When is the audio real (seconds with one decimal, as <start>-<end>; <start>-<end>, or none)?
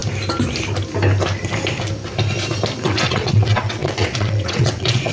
0.0-2.8